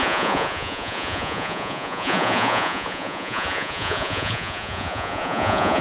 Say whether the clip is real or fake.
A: fake